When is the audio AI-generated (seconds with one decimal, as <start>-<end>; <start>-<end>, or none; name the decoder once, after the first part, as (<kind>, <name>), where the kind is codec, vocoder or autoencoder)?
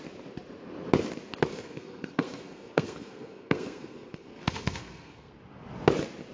1.5-5.3 (codec, SNAC)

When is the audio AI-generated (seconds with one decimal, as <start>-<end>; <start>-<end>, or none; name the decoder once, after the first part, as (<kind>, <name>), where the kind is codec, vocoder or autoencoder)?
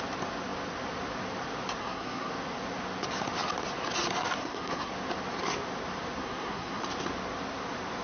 1.8-2.3 (codec, SNAC); 4.4-4.9; 6.2-6.8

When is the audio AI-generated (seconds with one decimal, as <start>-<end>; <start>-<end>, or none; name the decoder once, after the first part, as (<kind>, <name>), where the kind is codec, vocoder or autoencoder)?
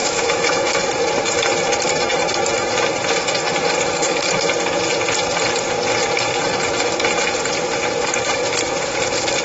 0.0-0.9 (autoencoder, DAC-VAE)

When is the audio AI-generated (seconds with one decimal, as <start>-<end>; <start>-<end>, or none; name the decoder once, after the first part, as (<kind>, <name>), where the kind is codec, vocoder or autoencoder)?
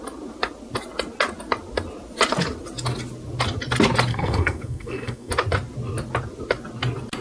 4.1-5.3 (codec, SNAC)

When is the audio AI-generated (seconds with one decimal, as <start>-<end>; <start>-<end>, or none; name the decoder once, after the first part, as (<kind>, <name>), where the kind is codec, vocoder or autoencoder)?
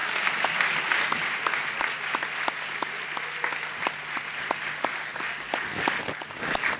none